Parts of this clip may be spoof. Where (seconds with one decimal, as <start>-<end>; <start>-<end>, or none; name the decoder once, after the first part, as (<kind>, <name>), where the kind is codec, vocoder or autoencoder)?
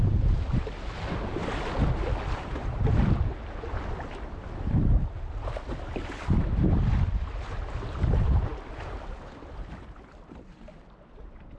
none